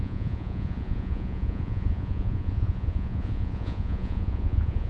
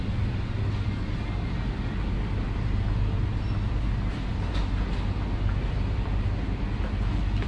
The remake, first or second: first